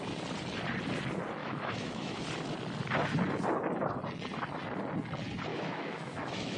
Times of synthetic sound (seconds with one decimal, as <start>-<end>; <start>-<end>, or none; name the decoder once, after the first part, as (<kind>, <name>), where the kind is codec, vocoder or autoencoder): 1.4-2.2 (autoencoder, DAC-VAE); 5.5-6.6